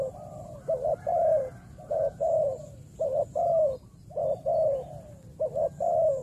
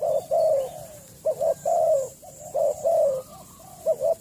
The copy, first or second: second